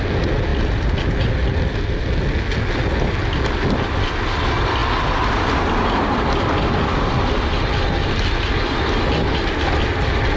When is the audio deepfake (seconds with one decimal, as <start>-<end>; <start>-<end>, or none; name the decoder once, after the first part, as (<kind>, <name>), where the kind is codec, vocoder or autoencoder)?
none